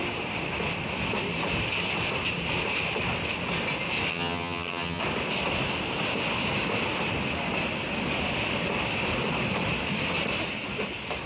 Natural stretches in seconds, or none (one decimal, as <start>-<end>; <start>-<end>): 0.0-4.1; 5.0-11.3